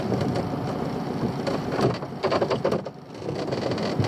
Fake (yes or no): no